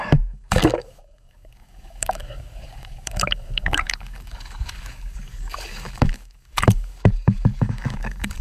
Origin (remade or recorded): remade